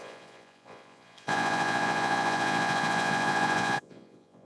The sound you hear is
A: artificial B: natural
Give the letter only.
A